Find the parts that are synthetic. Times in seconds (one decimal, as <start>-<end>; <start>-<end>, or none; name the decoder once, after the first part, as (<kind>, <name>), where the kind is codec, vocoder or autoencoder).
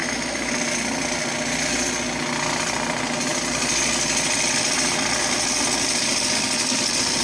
0.0-0.5 (autoencoder, DAC-VAE)